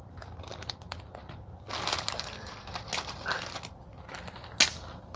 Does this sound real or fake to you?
real